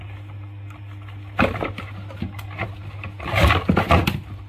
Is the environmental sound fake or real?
real